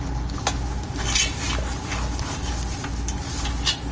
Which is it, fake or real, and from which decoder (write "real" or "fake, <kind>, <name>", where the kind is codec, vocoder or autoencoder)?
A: real